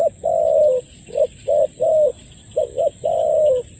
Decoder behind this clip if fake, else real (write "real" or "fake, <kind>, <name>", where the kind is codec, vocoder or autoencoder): real